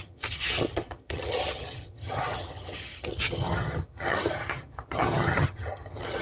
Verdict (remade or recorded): remade